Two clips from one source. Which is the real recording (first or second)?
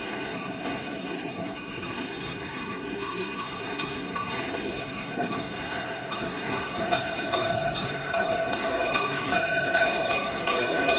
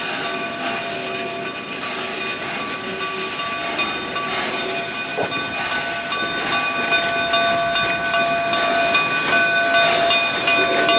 second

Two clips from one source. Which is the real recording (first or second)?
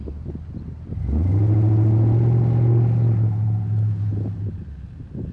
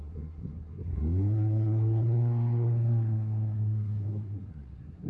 first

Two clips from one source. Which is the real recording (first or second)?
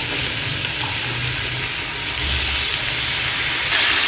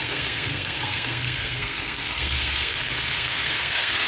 first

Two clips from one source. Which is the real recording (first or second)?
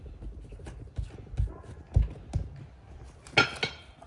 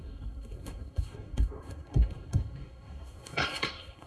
first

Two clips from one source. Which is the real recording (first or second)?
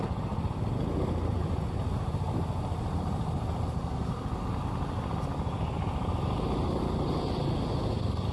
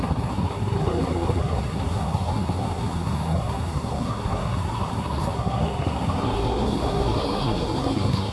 first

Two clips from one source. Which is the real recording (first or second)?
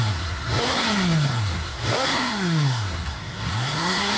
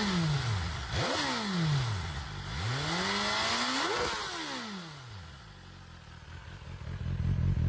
second